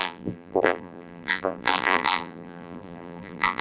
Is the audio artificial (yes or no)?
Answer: yes